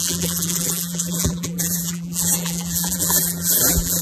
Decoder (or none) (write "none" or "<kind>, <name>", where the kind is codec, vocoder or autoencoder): vocoder, BigVGAN v2